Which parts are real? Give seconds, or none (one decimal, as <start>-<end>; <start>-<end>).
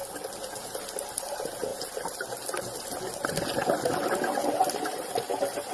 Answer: 0.0-5.7